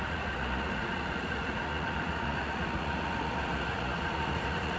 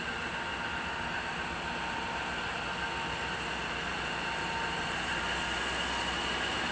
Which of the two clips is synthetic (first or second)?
first